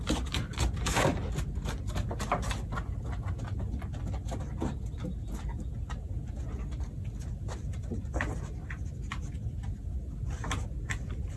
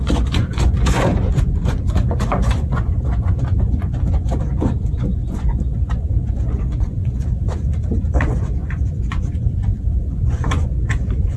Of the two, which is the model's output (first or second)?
second